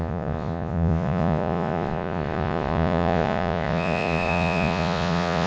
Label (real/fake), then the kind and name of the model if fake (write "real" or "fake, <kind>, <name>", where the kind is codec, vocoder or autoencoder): fake, vocoder, Vocos